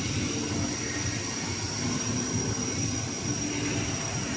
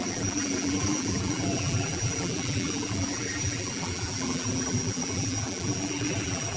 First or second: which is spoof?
second